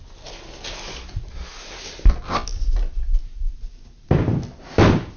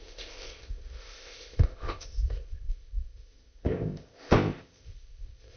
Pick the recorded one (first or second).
first